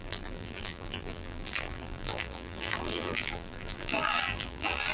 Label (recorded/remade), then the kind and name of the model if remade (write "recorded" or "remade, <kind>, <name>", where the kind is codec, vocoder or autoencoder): remade, vocoder, BigVGAN v2